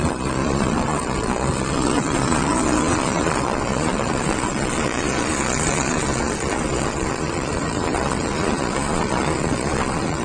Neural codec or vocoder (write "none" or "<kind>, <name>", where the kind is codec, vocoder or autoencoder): vocoder, Vocos